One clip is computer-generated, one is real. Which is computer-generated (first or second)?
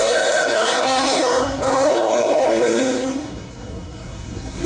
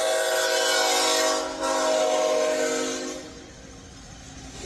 first